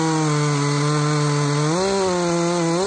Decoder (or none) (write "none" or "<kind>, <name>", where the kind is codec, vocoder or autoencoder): none